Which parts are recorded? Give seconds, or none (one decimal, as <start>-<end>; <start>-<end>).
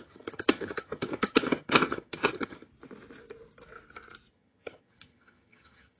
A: 2.7-4.3